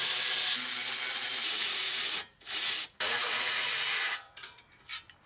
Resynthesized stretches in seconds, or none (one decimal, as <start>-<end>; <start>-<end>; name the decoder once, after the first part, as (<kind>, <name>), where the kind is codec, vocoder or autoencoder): 1.4-4.6 (vocoder, Vocos)